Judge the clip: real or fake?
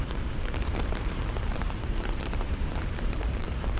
fake